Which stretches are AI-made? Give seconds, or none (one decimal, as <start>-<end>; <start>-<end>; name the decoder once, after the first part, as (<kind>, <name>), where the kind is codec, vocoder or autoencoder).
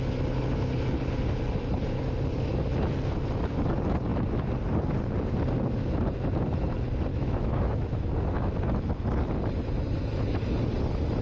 7.1-8.6 (autoencoder, DAC-VAE)